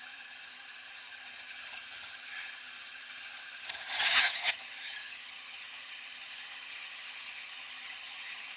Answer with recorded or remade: remade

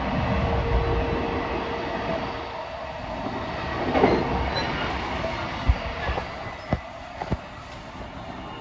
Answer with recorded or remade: recorded